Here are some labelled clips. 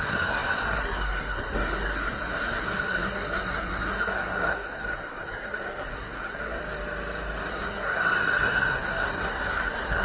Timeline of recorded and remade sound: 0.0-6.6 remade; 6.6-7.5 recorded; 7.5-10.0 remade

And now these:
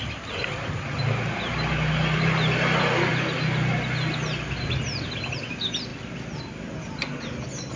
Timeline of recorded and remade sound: 0.0-7.8 recorded